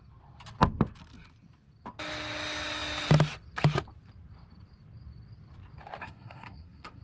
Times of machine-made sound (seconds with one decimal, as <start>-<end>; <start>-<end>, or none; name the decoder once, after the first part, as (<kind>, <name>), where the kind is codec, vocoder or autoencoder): 6.0-7.0 (codec, SNAC)